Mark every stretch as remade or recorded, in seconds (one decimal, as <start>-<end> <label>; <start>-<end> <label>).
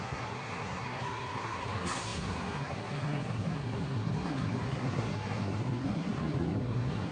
0.0-7.1 remade